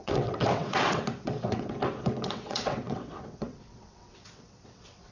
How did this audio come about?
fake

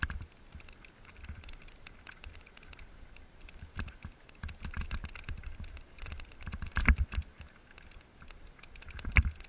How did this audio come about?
real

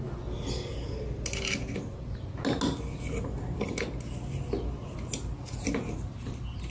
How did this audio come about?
real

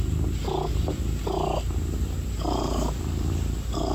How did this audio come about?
real